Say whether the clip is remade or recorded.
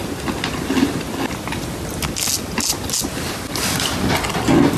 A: recorded